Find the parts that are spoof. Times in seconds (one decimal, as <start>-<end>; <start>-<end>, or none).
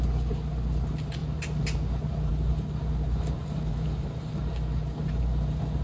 3.7-4.3